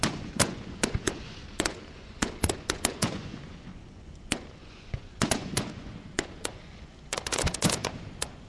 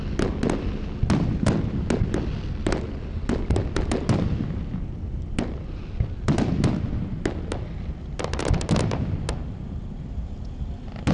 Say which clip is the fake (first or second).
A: first